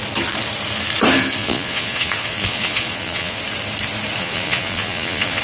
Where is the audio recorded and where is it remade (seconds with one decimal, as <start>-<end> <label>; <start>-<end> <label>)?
0.0-1.4 recorded; 1.4-3.4 remade; 3.4-4.2 recorded; 4.2-5.4 remade